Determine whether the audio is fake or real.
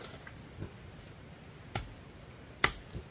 fake